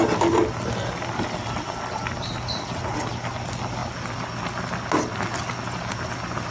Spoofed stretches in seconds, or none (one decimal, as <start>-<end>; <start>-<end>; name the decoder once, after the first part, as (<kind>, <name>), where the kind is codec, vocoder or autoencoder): none